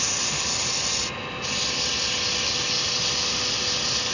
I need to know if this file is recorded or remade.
recorded